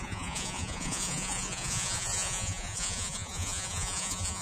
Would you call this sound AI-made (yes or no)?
yes